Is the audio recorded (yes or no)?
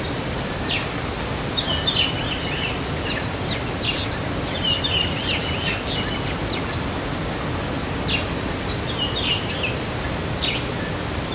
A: yes